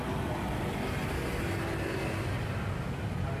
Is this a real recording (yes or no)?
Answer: yes